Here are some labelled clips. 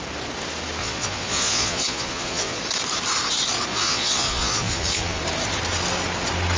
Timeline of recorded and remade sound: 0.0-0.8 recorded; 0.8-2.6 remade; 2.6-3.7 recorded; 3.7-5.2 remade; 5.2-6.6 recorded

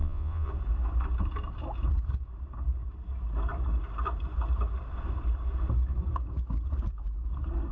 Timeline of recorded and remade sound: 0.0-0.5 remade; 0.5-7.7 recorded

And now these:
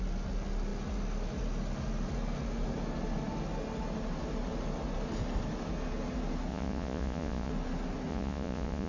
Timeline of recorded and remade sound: 0.0-6.5 recorded; 6.5-7.5 remade; 7.5-8.1 recorded; 8.1-8.9 remade

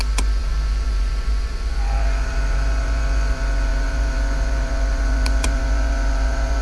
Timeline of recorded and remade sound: 0.0-6.6 remade

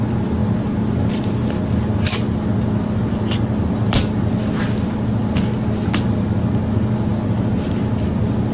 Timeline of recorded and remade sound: 0.0-8.5 recorded

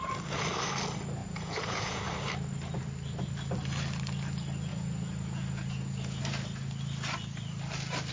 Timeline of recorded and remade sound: 0.0-1.2 recorded; 1.2-2.0 remade; 2.0-4.7 recorded; 4.7-6.2 remade; 6.2-8.1 recorded

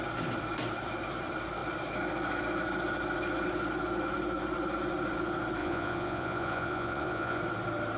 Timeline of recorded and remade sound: 0.0-5.6 recorded; 5.6-7.4 remade; 7.4-8.0 recorded